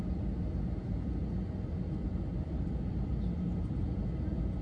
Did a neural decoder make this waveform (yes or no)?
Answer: no